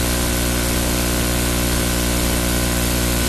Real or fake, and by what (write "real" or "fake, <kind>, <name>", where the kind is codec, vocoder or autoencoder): real